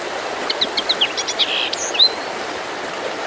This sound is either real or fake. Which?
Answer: fake